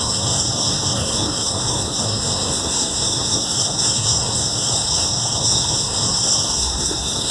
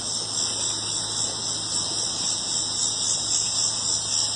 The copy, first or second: first